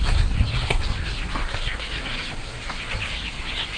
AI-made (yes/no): yes